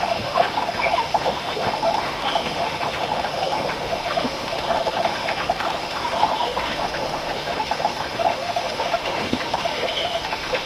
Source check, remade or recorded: remade